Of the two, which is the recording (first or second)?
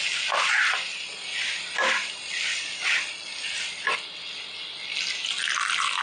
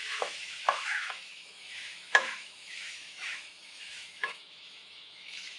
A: first